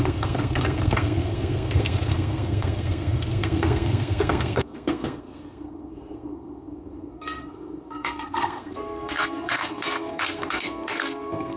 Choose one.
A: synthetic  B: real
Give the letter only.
A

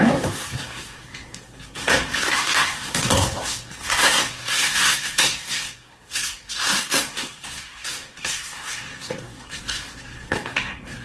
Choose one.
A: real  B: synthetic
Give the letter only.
B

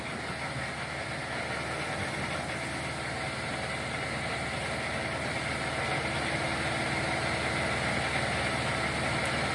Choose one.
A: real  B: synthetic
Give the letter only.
A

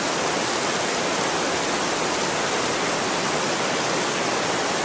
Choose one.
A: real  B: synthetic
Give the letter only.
A